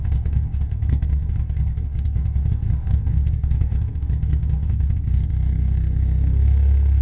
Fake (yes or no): yes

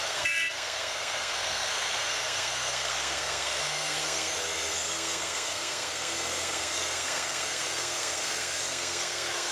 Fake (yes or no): yes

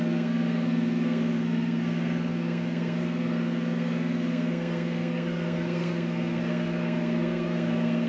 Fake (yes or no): yes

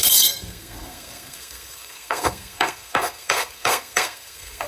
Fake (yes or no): yes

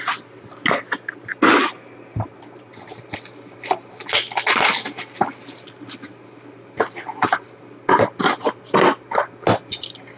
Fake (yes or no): no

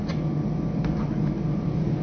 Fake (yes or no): no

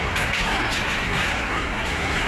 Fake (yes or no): yes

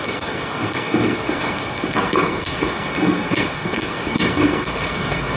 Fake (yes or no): yes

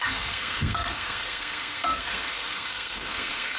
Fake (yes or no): yes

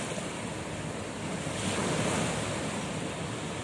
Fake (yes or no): no